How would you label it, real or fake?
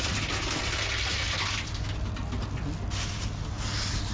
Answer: real